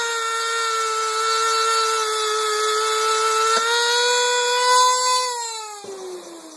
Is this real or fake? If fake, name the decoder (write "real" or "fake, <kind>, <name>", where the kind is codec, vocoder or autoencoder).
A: real